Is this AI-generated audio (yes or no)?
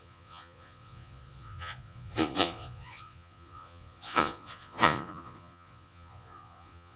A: yes